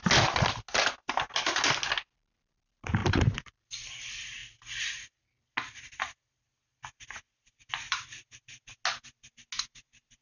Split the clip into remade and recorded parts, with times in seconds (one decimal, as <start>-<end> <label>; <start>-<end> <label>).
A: 0.0-3.0 recorded; 3.0-3.9 remade; 3.9-10.2 recorded